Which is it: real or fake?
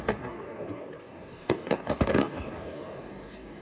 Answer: fake